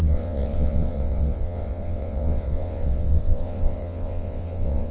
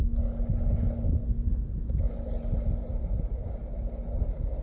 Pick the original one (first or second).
second